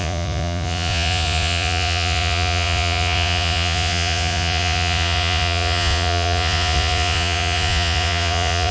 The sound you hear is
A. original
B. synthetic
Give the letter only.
B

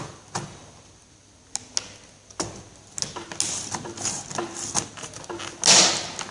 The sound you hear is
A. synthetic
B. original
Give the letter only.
B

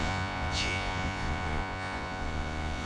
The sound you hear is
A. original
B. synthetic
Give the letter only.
B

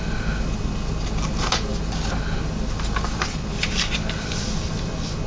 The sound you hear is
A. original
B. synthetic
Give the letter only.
A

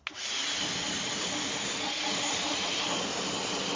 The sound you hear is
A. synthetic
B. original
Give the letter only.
B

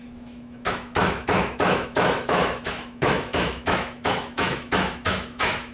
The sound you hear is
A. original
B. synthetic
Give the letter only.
B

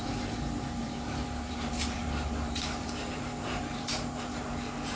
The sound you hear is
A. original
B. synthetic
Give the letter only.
B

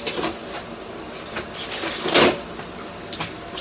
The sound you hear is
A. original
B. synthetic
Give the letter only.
A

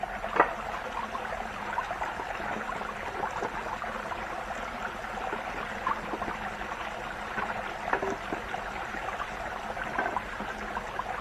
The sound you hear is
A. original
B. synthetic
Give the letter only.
A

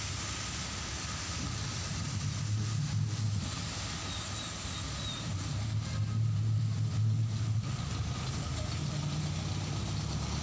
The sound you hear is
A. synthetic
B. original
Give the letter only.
B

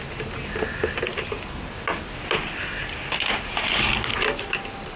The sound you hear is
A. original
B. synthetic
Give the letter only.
A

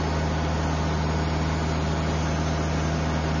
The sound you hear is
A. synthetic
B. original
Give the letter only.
B